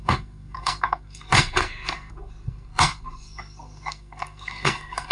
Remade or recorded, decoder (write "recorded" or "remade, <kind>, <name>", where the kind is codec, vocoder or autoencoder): remade, codec, SNAC